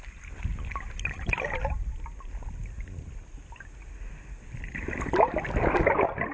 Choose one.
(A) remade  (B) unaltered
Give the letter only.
B